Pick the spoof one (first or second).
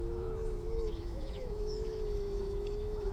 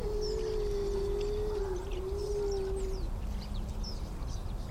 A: first